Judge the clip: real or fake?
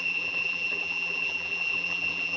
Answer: fake